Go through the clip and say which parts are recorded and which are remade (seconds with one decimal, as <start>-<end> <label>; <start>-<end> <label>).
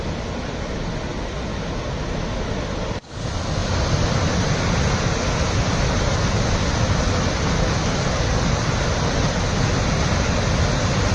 0.0-11.1 recorded